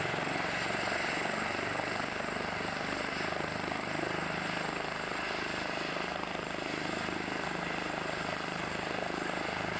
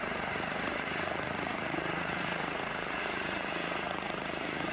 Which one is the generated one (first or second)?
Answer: second